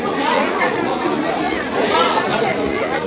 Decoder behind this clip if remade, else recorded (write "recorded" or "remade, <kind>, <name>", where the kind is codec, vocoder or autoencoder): remade, vocoder, Vocos